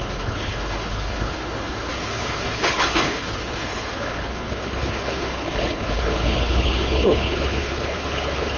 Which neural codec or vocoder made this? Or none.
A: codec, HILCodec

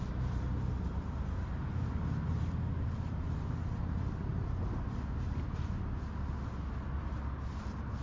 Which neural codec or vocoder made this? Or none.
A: none